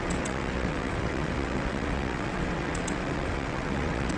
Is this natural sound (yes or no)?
no